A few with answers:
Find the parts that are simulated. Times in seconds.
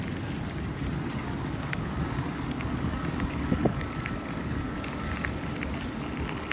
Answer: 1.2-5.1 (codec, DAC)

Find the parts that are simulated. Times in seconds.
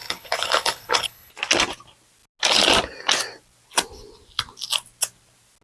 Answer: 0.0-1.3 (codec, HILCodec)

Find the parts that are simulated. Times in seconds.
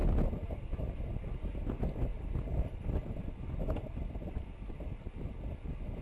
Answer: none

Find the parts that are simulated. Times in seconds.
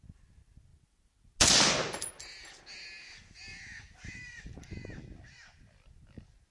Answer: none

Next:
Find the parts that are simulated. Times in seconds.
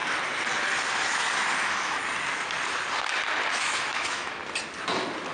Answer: 1.6-2.0 (autoencoder, DAC-VAE); 3.5-4.4